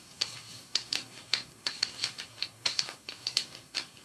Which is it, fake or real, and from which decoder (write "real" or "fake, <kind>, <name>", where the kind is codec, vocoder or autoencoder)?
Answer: fake, codec, SNAC